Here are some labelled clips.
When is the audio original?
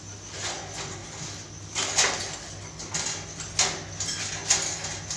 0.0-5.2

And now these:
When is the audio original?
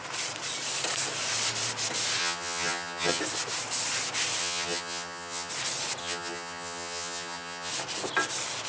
0.0-2.2; 3.2-4.4; 5.5-6.0; 7.7-8.7